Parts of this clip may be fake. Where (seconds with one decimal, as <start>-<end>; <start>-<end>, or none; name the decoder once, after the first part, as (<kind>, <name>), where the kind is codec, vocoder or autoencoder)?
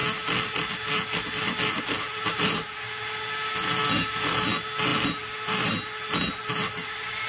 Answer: none